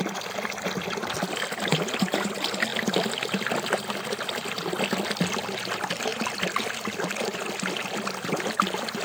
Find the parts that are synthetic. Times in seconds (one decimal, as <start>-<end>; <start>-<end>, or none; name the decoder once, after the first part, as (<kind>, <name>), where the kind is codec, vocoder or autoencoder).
none